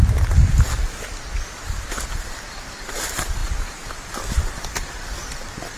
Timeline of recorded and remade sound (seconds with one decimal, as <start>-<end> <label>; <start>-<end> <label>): 0.0-5.8 remade